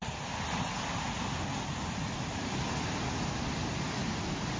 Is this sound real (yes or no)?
yes